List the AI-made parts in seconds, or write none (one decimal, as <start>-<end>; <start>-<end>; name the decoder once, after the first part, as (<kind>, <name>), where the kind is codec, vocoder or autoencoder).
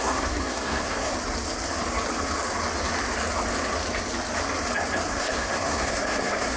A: 0.0-1.1 (codec, SNAC); 5.1-6.6